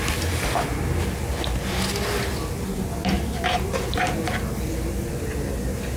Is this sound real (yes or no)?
yes